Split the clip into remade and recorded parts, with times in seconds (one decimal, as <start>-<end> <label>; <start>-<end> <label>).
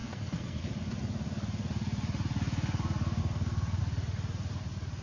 0.0-0.6 remade; 0.6-3.2 recorded; 3.2-3.8 remade; 3.8-5.0 recorded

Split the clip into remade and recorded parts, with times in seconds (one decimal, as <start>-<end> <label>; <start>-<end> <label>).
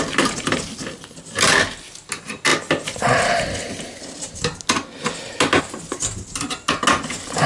0.0-7.5 recorded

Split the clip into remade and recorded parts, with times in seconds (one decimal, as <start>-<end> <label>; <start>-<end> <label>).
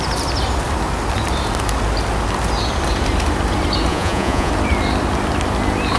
0.0-3.9 recorded; 3.9-4.5 remade; 4.5-6.0 recorded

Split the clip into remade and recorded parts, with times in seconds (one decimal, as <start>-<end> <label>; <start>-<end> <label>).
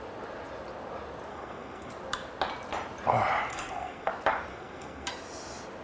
0.0-1.3 recorded; 1.3-1.9 remade; 1.9-3.5 recorded; 3.5-4.1 remade; 4.1-4.5 recorded; 4.5-5.1 remade; 5.1-5.8 recorded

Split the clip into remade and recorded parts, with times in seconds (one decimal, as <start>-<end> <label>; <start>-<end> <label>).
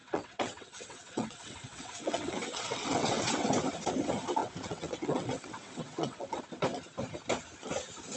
0.0-3.5 remade; 3.5-4.4 recorded; 4.4-6.4 remade; 6.4-8.2 recorded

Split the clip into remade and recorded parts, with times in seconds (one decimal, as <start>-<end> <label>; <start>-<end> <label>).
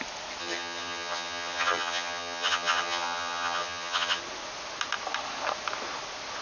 0.0-0.4 recorded; 0.4-4.2 remade; 4.2-6.4 recorded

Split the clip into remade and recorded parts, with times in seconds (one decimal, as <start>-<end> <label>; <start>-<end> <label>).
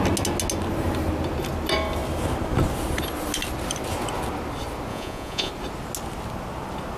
0.0-4.9 recorded; 4.9-5.5 remade; 5.5-7.0 recorded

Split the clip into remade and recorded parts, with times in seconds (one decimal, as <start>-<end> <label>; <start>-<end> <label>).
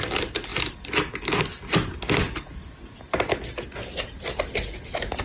0.0-5.2 recorded